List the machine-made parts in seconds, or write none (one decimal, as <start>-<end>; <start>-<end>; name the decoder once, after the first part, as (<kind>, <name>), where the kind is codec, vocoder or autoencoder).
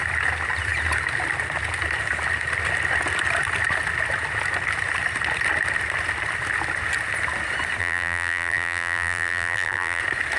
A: 7.8-10.0 (vocoder, BigVGAN v2)